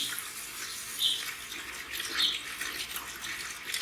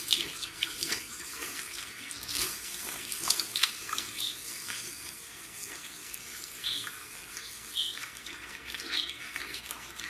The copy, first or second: second